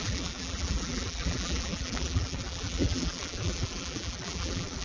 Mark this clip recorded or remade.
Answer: remade